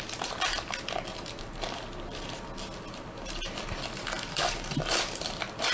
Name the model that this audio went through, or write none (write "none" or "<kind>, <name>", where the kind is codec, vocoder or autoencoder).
none